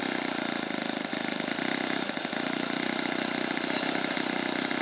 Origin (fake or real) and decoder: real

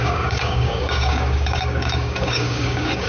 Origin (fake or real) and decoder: fake, codec, DAC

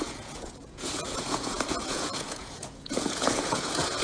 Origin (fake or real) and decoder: fake, vocoder, Vocos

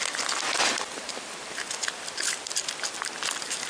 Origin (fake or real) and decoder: real